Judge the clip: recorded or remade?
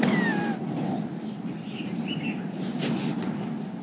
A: recorded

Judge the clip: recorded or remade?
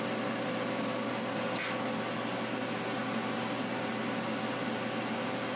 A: recorded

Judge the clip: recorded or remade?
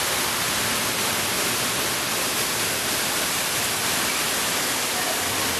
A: recorded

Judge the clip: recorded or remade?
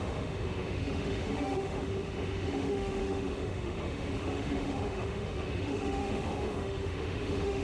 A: remade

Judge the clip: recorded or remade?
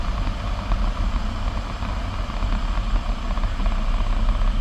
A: recorded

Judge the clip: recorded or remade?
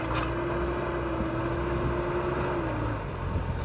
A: recorded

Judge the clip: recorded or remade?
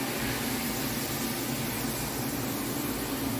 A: recorded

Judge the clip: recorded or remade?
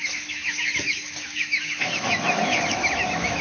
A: remade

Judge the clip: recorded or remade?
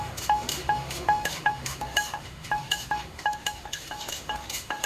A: remade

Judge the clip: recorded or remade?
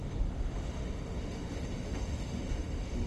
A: remade